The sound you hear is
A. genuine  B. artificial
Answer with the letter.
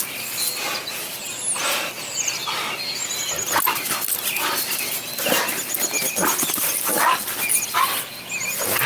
A